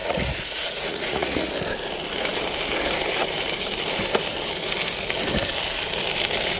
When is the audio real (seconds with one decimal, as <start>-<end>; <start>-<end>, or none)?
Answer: 1.5-6.6